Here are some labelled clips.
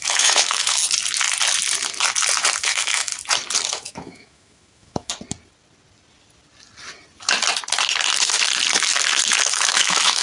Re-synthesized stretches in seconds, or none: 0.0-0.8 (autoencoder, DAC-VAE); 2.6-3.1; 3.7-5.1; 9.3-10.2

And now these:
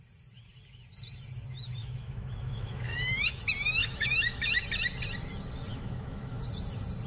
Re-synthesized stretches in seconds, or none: 1.8-3.4 (autoencoder, DAC-VAE); 3.8-4.5; 5.7-6.4

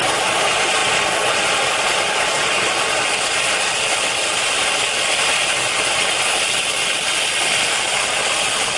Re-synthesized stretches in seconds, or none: none

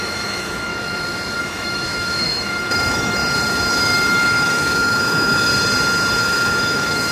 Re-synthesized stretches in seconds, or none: 0.0-0.7 (autoencoder, DAC-VAE); 1.4-3.2; 3.7-5.5; 6.2-7.1

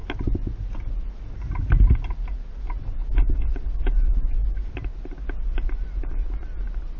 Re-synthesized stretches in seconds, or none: none

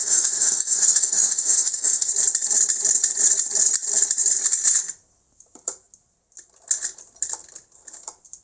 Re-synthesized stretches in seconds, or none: 0.0-2.1 (autoencoder, DAC-VAE)

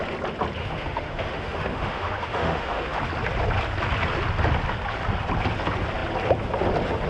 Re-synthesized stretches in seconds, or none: 0.6-3.0 (autoencoder, DAC-VAE)

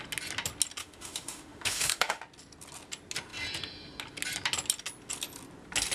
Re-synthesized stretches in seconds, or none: 0.8-2.2 (autoencoder, DAC-VAE)